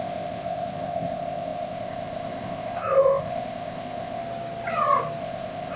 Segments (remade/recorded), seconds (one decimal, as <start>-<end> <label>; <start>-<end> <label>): 0.0-4.2 remade; 4.2-5.2 recorded; 5.2-5.8 remade